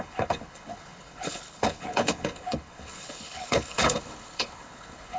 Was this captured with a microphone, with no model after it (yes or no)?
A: no